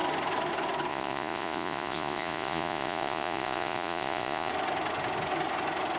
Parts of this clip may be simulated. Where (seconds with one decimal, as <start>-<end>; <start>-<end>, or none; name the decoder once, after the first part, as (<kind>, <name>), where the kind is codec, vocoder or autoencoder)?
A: 0.9-4.5 (vocoder, Vocos)